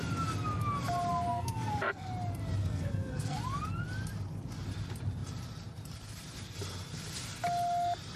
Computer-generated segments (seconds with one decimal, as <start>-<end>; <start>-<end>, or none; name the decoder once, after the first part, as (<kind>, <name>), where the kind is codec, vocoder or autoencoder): 1.3-2.1 (codec, SNAC); 2.6-3.4